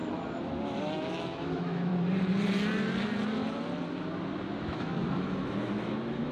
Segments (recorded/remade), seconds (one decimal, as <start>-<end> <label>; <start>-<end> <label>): 0.0-0.8 recorded; 0.8-1.9 remade; 1.9-4.6 recorded; 4.6-6.3 remade